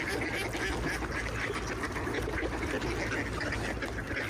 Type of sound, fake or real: real